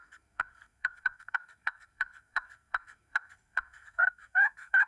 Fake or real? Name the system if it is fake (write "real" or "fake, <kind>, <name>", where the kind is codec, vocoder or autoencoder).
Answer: fake, codec, SNAC